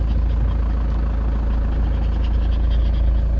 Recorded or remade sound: recorded